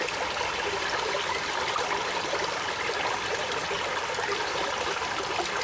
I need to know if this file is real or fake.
real